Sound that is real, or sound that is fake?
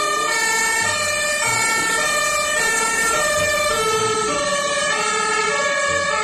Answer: fake